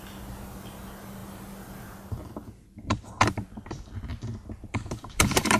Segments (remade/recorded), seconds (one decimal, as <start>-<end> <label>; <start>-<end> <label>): 0.0-5.6 remade